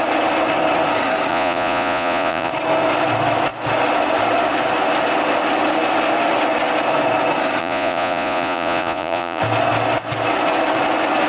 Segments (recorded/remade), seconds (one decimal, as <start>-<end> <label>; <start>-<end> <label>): 0.0-1.3 recorded; 1.3-2.5 remade; 2.5-7.6 recorded; 7.6-9.4 remade; 9.4-11.3 recorded